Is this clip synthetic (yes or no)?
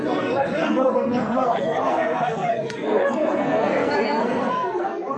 yes